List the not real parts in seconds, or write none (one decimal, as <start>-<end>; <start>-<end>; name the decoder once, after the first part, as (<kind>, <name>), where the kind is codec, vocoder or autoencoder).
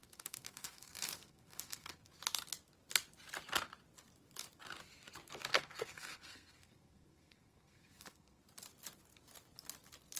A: 0.0-2.1 (codec, SNAC); 5.5-8.4